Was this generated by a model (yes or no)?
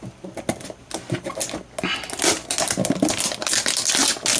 no